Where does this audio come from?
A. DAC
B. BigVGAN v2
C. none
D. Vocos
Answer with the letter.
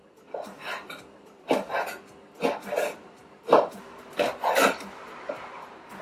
C